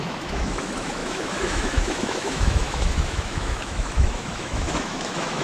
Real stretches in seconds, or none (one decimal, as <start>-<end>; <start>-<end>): none